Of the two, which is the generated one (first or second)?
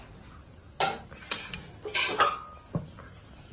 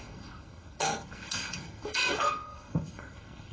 second